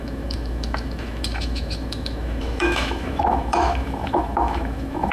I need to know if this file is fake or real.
fake